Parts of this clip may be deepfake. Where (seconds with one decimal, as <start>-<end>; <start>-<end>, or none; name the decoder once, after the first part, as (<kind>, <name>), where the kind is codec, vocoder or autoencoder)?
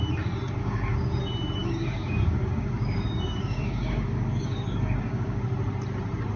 0.6-1.2 (codec, DAC); 1.6-5.4